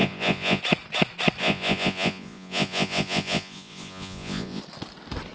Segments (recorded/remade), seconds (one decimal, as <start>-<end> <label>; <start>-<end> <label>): 0.0-0.6 remade; 0.6-1.4 recorded; 1.4-4.6 remade; 4.6-5.3 recorded